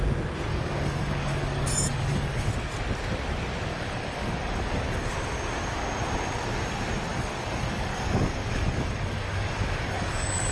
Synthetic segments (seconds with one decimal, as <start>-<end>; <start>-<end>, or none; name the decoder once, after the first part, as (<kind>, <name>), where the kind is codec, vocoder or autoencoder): 0.5-2.5 (codec, DAC); 3.7-5.1; 7.1-10.5